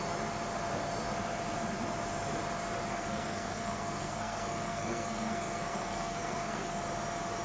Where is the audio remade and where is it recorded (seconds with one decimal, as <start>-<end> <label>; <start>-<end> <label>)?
0.0-2.9 recorded; 2.9-6.8 remade; 6.8-7.4 recorded